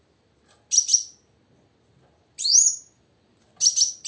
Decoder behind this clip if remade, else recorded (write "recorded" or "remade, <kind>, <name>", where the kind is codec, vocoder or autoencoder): recorded